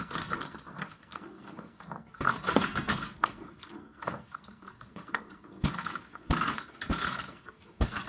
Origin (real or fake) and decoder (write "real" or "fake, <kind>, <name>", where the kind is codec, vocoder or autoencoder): fake, codec, SNAC